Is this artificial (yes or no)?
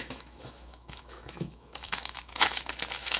yes